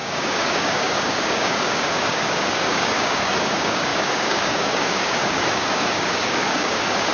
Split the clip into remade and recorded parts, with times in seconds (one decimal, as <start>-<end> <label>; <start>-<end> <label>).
0.0-7.1 remade